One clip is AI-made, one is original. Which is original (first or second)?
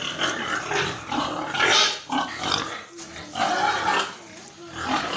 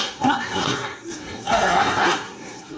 first